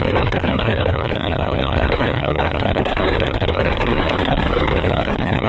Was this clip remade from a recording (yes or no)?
yes